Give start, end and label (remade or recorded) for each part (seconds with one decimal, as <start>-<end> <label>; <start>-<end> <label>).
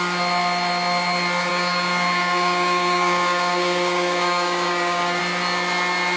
0.0-1.5 recorded; 1.5-5.2 remade; 5.2-6.2 recorded